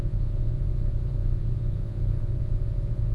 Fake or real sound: fake